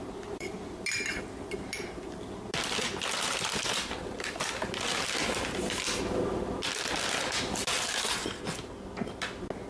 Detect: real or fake real